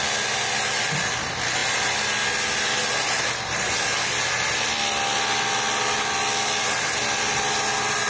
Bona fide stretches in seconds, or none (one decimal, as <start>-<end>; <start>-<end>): 0.0-8.1